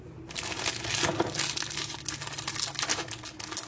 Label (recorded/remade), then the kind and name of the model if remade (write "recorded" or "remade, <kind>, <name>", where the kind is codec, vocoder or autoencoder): recorded